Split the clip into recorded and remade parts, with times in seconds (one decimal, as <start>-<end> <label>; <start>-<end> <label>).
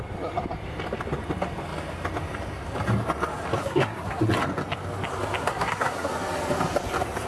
0.0-3.6 recorded; 3.6-4.2 remade; 4.2-5.4 recorded; 5.4-6.1 remade; 6.1-7.3 recorded